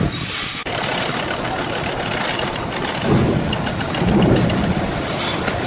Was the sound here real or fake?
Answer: real